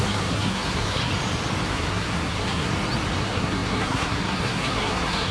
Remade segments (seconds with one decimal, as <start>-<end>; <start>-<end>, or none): 0.0-1.1; 1.7-2.7; 3.2-5.3